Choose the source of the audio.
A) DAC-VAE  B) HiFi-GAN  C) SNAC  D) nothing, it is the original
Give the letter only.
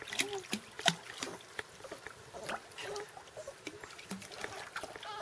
D